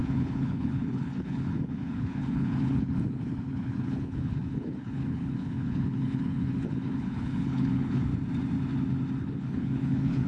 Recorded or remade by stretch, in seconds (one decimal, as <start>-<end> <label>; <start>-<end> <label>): 0.0-8.1 remade; 8.1-9.2 recorded; 9.2-10.3 remade